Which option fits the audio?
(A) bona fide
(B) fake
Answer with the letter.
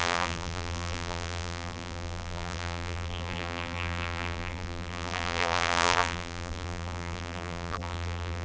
B